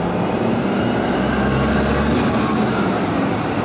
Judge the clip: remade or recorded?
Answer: recorded